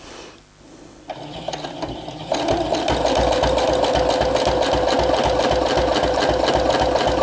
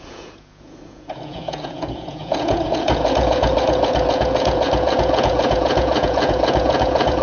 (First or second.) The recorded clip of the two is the first